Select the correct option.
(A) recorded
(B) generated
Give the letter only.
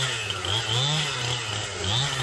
A